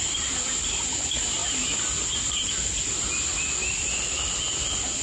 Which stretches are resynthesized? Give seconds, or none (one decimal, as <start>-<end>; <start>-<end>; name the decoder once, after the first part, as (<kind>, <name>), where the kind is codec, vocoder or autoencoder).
none